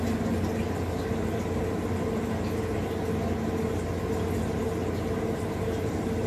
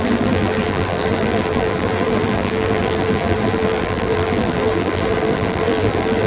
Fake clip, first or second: second